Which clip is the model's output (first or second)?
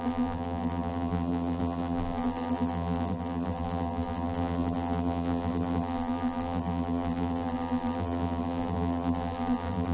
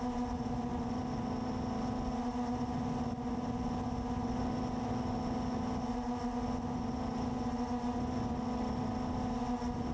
first